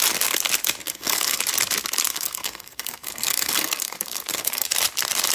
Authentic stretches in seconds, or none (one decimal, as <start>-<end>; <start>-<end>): 0.0-0.8; 1.4-2.1; 4.7-5.3